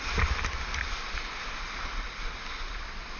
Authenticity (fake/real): real